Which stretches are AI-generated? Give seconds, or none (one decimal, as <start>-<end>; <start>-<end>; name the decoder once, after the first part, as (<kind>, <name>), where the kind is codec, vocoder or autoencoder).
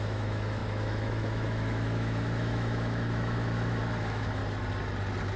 0.0-4.4 (autoencoder, DAC-VAE)